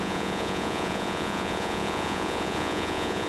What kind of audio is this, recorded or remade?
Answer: remade